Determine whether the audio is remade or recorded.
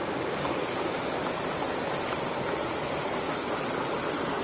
recorded